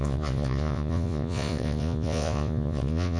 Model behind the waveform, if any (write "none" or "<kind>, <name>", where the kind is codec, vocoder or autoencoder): vocoder, Vocos